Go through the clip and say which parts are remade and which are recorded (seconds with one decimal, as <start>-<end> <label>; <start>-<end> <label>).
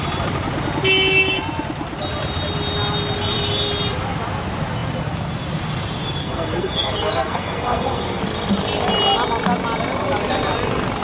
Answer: 0.0-6.2 recorded; 6.2-8.2 remade; 8.2-11.0 recorded